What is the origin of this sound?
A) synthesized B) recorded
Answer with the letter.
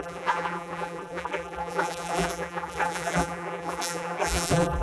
A